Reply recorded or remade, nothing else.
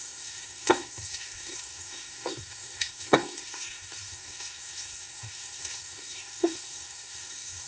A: remade